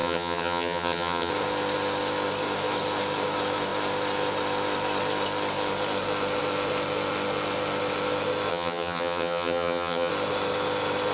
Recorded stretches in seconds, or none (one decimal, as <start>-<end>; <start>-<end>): 1.3-8.5; 10.1-11.1